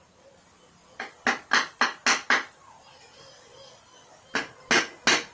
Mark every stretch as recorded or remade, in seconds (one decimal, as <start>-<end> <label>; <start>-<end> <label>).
0.0-5.3 recorded